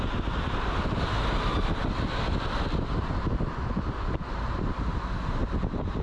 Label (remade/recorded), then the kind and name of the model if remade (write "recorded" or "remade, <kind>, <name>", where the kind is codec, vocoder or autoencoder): recorded